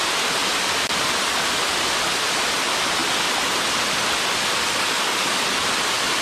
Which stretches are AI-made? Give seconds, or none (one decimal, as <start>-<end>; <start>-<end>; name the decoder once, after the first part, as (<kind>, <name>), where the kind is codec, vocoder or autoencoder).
4.6-5.4 (codec, DAC)